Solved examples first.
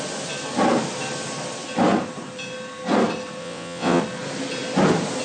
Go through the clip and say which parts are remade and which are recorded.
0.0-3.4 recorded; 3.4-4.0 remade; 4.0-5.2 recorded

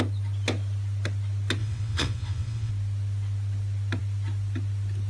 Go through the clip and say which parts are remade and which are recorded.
0.0-1.6 recorded; 1.6-2.7 remade; 2.7-5.1 recorded